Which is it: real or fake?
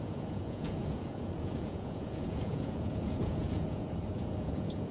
fake